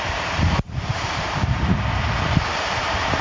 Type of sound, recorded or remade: remade